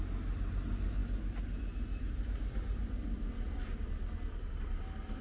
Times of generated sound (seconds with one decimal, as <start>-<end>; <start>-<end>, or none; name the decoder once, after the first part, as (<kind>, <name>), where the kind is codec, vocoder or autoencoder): none